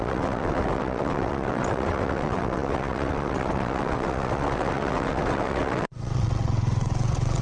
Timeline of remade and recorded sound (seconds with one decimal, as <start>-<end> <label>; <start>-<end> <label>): 0.0-7.4 remade